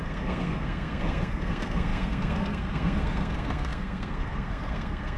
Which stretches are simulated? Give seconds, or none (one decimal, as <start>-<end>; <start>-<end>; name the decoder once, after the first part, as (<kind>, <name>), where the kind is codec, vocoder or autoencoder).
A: 0.0-5.2 (codec, SNAC)